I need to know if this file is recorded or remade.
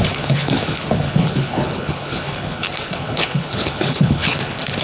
remade